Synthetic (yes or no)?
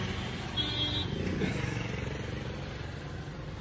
no